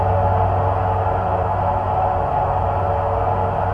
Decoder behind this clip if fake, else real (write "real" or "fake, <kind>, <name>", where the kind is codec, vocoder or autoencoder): real